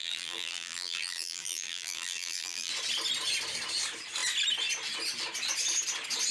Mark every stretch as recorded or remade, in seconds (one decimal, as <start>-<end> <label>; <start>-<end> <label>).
0.0-2.7 remade; 2.7-6.3 recorded

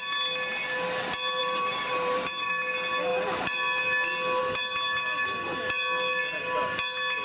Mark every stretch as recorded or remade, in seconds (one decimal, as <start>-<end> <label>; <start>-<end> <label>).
0.0-1.4 recorded; 1.4-2.5 remade; 2.5-7.2 recorded

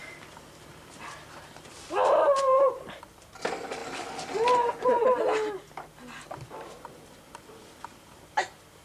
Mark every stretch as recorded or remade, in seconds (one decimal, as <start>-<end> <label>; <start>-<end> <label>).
0.0-3.1 remade; 3.1-3.8 recorded; 3.8-4.7 remade; 4.7-8.8 recorded

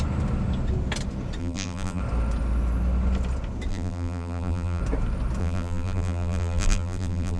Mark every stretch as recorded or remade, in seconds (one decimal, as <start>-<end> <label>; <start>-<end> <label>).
0.0-1.4 recorded; 1.4-2.0 remade; 2.0-3.7 recorded; 3.7-4.8 remade; 4.8-5.4 recorded; 5.4-7.4 remade

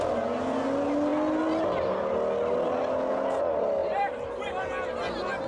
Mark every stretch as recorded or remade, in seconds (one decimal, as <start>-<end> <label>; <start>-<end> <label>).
0.0-3.8 recorded; 3.8-4.7 remade; 4.7-5.5 recorded

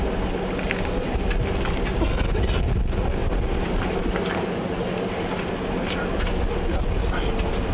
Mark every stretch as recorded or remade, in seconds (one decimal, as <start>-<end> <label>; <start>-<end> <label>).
0.0-7.7 recorded